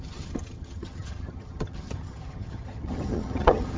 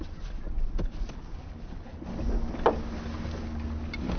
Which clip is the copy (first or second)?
first